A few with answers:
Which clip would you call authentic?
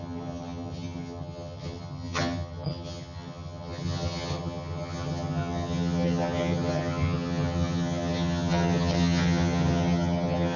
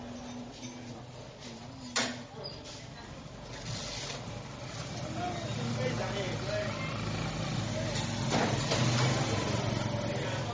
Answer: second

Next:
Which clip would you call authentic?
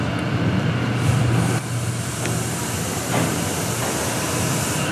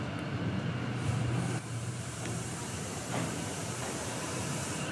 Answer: first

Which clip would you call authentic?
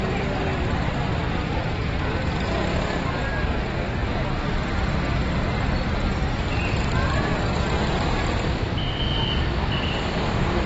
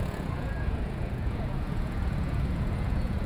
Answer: first